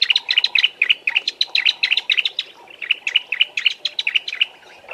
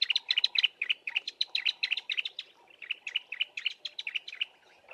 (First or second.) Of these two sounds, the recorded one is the first